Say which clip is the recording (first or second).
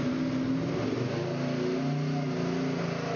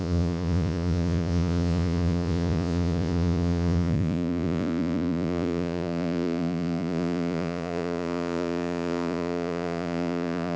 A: first